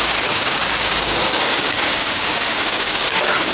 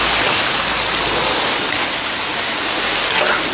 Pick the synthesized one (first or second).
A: first